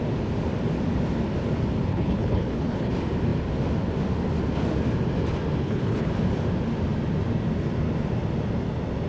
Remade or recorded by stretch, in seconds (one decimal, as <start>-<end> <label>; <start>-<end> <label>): 0.0-1.9 recorded; 1.9-2.9 remade; 2.9-5.6 recorded; 5.6-6.1 remade; 6.1-9.1 recorded